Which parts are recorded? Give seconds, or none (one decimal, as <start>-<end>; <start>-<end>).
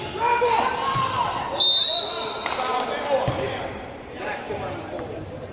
0.0-3.3